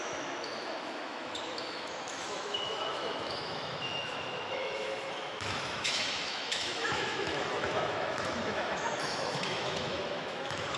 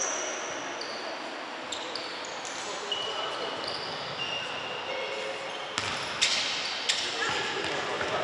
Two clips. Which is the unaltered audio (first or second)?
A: second